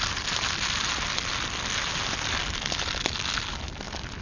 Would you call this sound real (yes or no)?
yes